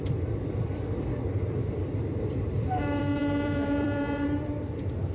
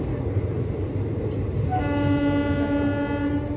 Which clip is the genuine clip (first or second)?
second